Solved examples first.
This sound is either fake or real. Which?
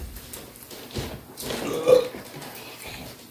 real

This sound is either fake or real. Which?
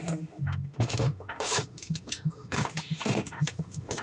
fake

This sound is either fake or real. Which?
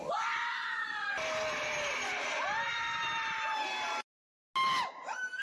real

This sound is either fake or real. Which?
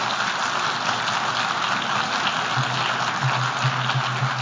real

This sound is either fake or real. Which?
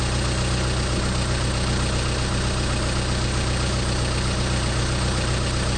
real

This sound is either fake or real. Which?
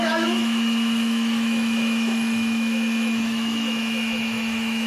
fake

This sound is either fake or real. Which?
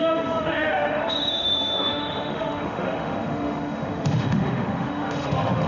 fake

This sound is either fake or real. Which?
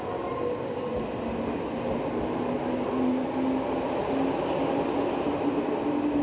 real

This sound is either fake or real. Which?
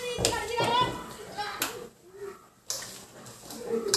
real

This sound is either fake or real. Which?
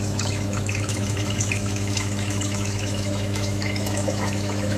fake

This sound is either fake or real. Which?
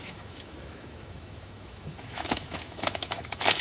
fake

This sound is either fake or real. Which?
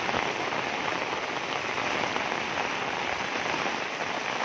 real